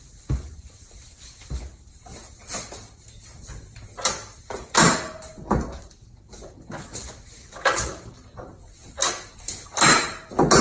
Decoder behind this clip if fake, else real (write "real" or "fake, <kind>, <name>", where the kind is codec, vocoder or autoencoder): real